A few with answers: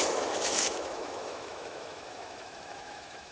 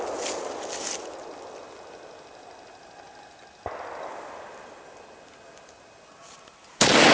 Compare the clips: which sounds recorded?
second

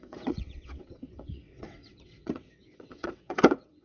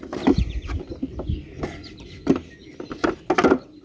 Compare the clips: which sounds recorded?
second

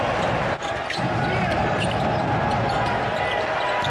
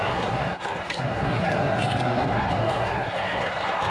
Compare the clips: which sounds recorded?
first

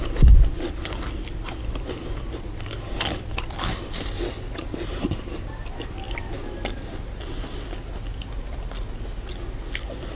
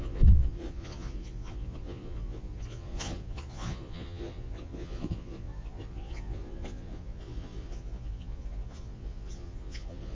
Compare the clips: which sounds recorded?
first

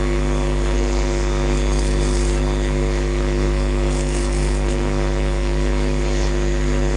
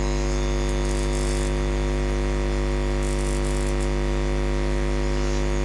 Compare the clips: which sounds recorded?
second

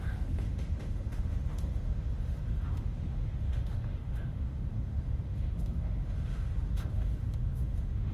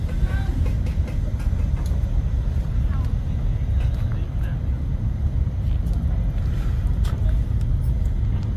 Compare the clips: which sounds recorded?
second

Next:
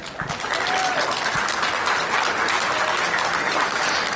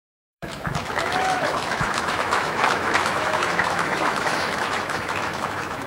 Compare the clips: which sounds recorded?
first